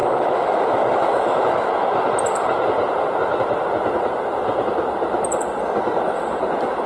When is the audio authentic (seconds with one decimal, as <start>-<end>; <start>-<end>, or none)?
1.7-6.9